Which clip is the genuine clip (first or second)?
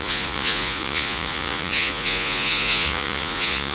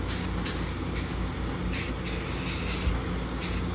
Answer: second